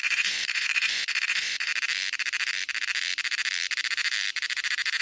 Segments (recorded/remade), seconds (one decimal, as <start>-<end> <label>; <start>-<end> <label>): 0.0-1.7 remade; 1.7-5.0 recorded